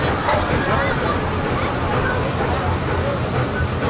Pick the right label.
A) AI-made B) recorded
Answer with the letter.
B